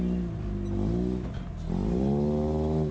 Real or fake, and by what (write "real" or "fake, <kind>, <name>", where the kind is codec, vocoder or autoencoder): real